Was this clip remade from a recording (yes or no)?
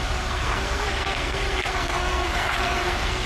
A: yes